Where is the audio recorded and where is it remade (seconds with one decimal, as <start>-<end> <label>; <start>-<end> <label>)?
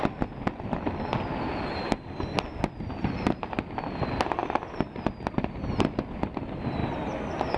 0.0-7.6 recorded